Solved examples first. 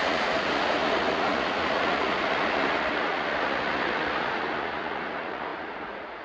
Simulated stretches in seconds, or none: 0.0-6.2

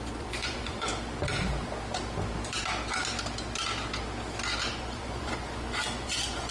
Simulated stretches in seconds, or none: 0.0-0.9; 4.7-6.5

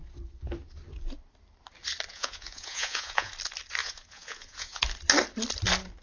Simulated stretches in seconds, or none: 2.1-3.3; 3.8-4.8

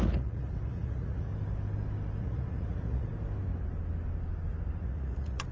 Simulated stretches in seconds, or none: 0.0-1.3; 2.2-3.1; 4.8-5.5

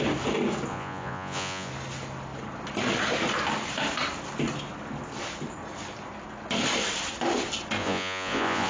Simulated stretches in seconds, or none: 0.7-1.7; 7.8-8.7

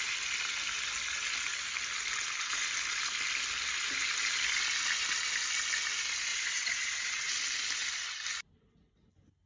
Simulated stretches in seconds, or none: 6.3-7.3

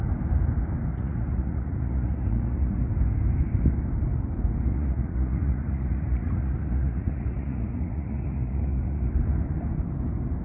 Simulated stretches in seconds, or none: 0.9-2.9; 4.7-9.1